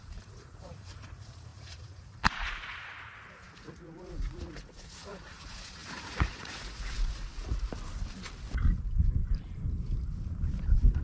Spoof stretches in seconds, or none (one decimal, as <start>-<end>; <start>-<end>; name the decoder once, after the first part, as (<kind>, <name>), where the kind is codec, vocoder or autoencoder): 0.0-7.7 (vocoder, Vocos)